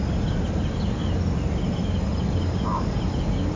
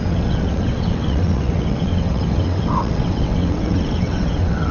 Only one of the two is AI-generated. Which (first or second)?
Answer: second